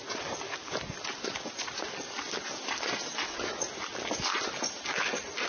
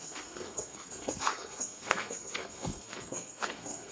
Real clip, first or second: first